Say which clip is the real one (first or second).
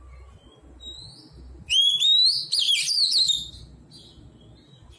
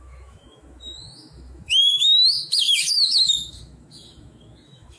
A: first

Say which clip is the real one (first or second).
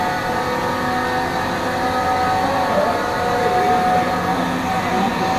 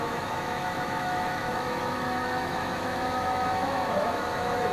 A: first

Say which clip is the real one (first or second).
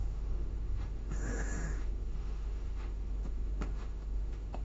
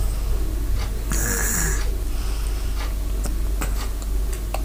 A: second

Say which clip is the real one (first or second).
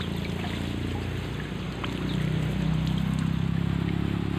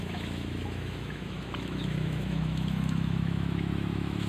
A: first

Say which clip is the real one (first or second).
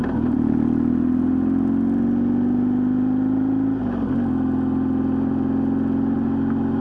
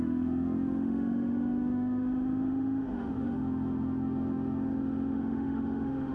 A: first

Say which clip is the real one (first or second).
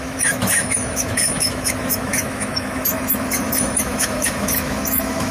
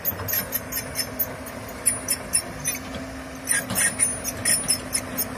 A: second